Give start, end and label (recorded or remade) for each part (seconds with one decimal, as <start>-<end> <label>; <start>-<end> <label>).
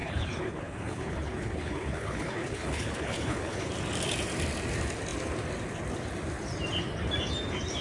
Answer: 0.0-3.7 remade; 3.7-7.8 recorded